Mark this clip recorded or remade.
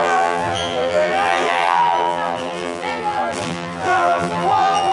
remade